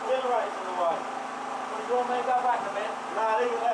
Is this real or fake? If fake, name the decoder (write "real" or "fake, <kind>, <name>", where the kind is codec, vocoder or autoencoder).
real